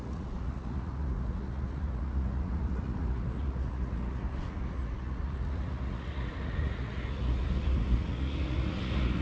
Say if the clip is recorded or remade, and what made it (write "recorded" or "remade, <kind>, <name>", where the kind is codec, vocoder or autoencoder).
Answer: remade, vocoder, Vocos